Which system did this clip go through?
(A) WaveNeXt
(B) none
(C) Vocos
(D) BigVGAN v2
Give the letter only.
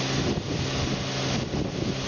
B